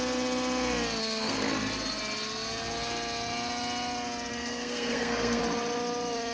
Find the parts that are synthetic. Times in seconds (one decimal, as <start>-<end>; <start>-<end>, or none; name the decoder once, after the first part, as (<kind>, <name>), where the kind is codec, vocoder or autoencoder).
1.0-1.5 (codec, SNAC); 4.3-5.4